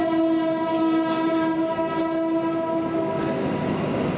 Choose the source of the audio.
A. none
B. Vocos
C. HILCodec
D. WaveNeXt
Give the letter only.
A